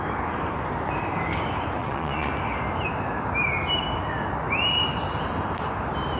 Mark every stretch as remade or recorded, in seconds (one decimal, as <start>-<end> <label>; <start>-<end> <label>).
0.0-1.8 recorded; 1.8-2.3 remade; 2.3-6.2 recorded